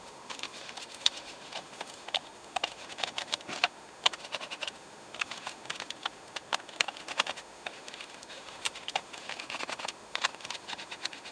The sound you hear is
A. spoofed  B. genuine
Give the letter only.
A